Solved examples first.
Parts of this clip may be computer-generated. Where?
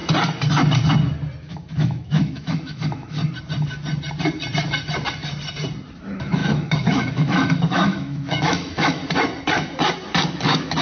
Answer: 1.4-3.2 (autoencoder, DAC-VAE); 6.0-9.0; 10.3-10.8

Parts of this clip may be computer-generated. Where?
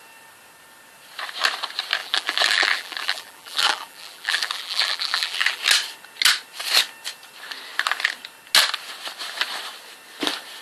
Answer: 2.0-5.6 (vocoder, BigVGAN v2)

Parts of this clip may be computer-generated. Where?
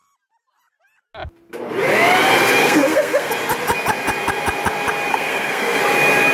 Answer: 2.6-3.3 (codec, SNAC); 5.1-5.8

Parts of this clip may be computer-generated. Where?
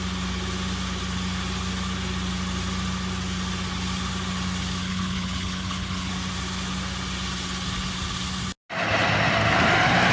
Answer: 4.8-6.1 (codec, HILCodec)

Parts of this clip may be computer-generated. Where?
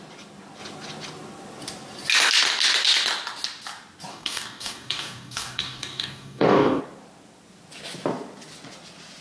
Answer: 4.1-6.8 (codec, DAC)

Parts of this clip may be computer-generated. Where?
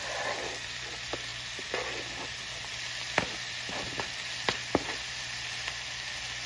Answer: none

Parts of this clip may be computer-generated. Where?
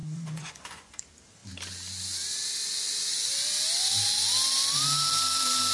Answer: 0.0-0.9 (vocoder, Vocos)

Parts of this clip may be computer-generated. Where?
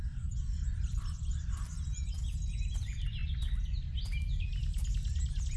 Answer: none